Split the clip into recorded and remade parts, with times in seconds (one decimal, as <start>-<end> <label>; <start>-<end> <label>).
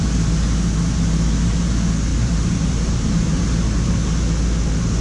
0.0-2.1 recorded; 2.1-3.4 remade; 3.4-5.0 recorded